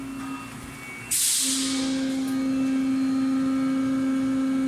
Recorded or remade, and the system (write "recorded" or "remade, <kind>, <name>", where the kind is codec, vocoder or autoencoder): recorded